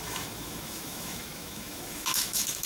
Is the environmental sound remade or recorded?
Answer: remade